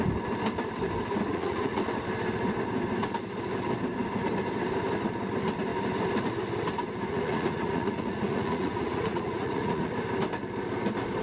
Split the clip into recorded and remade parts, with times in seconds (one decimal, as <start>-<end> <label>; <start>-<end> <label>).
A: 0.0-1.3 recorded; 1.3-1.8 remade; 1.8-7.1 recorded; 7.1-9.9 remade; 9.9-11.2 recorded